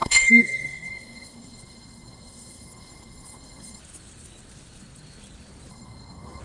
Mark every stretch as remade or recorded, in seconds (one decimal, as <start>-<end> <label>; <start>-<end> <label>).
0.0-3.8 remade; 3.8-5.7 recorded; 5.7-6.4 remade